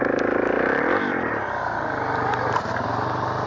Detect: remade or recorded recorded